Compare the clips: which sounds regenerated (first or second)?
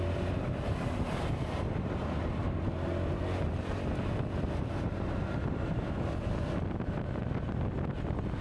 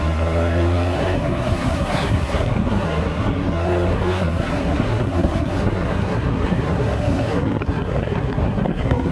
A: second